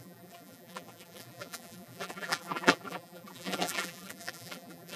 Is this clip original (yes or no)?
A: no